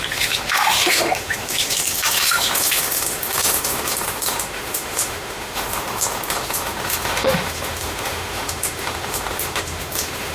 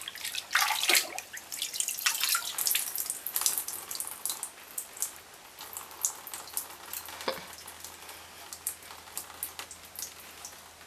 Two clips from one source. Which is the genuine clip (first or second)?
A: second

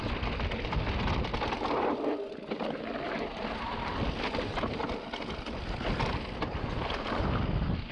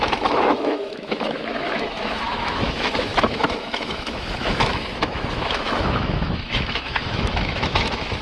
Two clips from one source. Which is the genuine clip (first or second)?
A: first